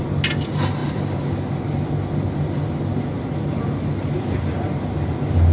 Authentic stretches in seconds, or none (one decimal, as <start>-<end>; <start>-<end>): 0.0-5.5